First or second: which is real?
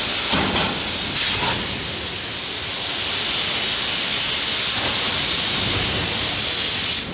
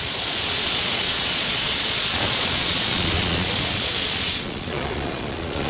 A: first